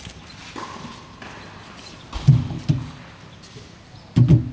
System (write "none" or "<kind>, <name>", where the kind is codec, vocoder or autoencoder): none